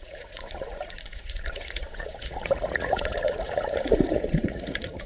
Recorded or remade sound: remade